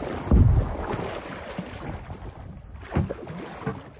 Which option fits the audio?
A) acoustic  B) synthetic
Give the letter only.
A